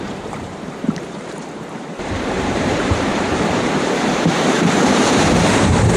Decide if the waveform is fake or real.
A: fake